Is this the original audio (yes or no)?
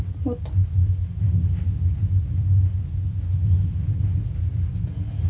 yes